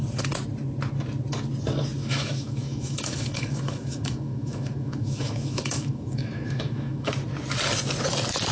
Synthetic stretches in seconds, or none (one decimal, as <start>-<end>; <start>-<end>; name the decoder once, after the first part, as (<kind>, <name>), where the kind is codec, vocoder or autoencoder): 2.0-7.1 (autoencoder, DAC-VAE)